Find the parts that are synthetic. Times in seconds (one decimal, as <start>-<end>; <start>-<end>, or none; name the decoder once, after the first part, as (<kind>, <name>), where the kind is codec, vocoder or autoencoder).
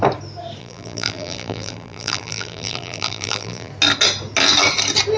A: 0.6-3.7 (vocoder, BigVGAN v2)